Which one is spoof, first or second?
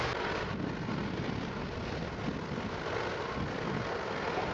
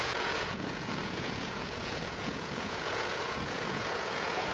second